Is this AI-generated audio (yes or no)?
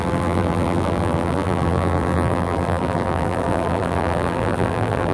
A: yes